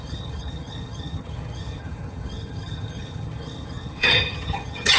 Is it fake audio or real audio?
fake